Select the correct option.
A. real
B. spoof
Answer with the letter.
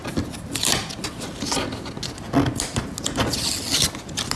A